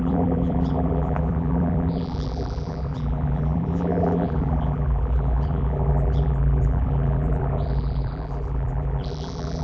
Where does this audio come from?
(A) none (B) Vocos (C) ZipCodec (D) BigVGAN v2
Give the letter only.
D